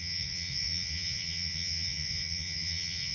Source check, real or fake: fake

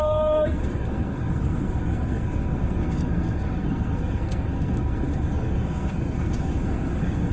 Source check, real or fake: fake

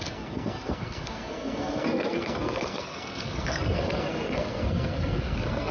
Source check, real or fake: fake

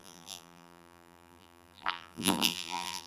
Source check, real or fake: fake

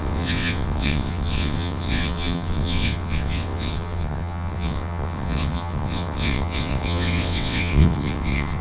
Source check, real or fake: fake